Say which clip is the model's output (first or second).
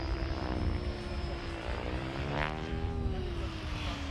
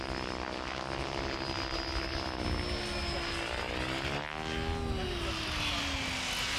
first